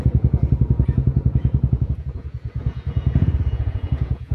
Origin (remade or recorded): remade